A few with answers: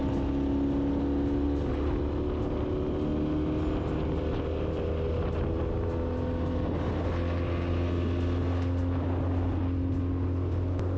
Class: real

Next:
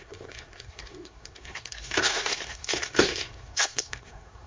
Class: fake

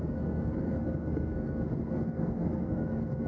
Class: fake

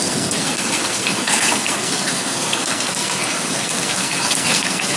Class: fake